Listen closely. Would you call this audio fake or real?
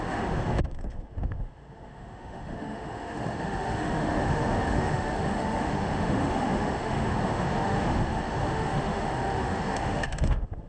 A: fake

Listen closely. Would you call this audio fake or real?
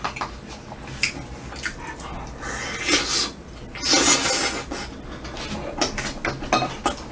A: real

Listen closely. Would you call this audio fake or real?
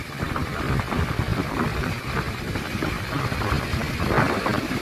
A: real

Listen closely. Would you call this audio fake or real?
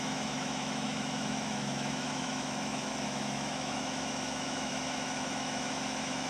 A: fake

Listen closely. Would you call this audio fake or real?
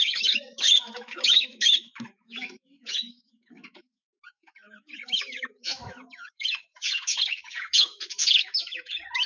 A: fake